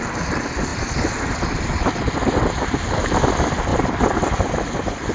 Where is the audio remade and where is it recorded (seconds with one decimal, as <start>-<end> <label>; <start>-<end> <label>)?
0.0-0.7 recorded; 0.7-2.4 remade; 2.4-5.1 recorded